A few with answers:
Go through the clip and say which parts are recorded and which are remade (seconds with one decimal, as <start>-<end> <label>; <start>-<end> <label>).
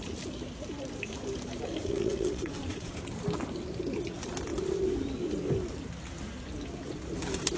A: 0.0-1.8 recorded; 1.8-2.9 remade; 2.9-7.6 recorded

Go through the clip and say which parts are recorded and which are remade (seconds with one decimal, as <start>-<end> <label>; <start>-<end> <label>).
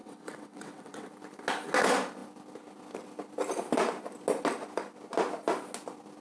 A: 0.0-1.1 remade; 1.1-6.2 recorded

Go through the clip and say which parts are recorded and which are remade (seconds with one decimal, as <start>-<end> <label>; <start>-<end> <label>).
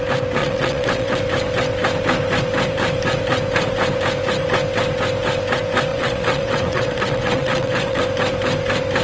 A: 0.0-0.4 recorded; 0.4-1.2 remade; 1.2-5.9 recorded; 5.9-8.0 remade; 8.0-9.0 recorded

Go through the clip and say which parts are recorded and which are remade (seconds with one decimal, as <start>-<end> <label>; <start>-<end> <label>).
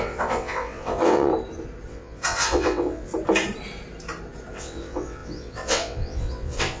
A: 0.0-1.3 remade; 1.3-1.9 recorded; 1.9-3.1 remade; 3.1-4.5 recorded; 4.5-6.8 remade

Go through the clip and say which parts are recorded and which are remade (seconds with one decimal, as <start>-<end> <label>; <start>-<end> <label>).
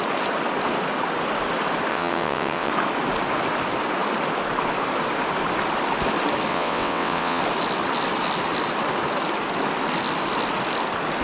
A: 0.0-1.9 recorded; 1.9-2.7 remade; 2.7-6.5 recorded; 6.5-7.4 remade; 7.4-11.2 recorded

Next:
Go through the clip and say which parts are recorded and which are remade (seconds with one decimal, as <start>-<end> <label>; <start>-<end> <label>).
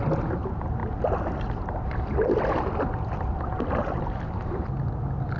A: 0.0-5.4 recorded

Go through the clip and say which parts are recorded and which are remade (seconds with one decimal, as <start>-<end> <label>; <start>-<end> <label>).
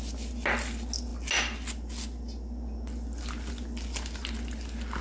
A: 0.0-5.0 recorded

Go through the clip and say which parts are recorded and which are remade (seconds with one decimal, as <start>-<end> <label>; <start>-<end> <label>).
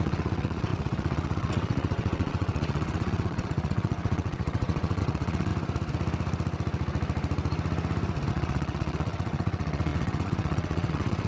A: 0.0-5.5 remade; 5.5-8.3 recorded; 8.3-11.3 remade